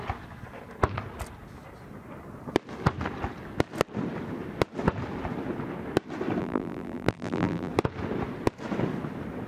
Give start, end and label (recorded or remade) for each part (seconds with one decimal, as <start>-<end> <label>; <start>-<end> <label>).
0.0-6.4 recorded; 6.4-7.7 remade; 7.7-9.5 recorded